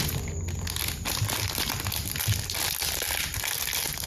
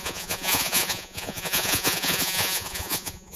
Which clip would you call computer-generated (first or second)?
second